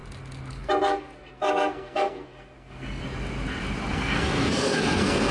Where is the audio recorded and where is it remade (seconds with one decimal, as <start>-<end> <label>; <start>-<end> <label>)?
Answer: 0.0-0.5 recorded; 0.5-3.0 remade; 3.0-3.9 recorded; 3.9-5.3 remade